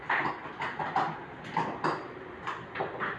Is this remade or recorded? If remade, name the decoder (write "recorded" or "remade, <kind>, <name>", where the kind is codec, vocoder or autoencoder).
recorded